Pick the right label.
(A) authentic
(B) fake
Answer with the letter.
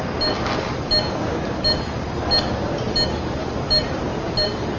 A